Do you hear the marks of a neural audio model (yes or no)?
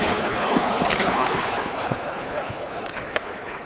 yes